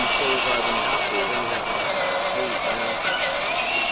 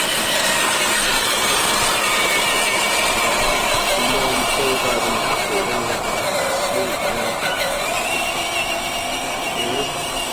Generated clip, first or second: second